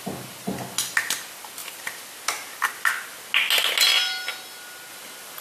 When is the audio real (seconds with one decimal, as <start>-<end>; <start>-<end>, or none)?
0.0-5.4